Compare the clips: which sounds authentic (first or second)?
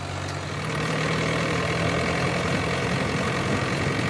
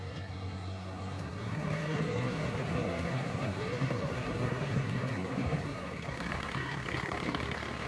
first